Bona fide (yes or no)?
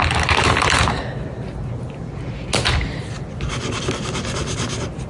yes